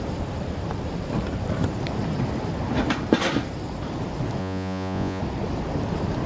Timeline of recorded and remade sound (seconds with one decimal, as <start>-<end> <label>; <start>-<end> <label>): 0.0-4.4 recorded; 4.4-5.2 remade; 5.2-6.3 recorded

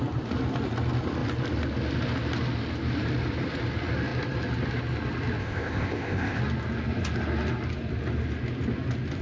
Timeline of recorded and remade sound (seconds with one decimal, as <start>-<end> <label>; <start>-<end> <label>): 0.0-5.4 recorded; 5.4-6.4 remade; 6.4-9.2 recorded

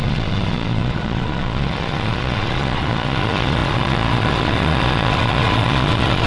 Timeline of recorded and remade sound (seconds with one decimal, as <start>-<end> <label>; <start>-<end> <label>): 0.0-6.3 remade

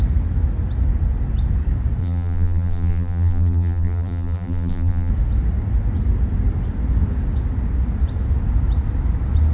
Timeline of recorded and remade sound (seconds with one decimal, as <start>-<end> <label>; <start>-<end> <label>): 0.0-2.0 recorded; 2.0-5.1 remade; 5.1-9.5 recorded

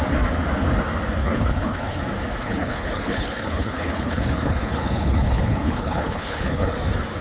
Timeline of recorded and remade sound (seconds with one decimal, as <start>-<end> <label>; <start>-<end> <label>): 0.0-1.2 recorded; 1.2-2.0 remade; 2.0-2.4 recorded; 2.4-6.7 remade; 6.7-7.2 recorded

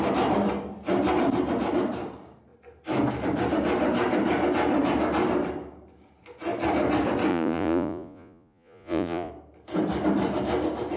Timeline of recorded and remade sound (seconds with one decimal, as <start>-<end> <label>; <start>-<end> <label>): 0.0-7.3 recorded; 7.3-9.3 remade; 9.3-11.0 recorded